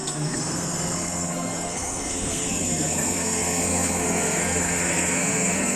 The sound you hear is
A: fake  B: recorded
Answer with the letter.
A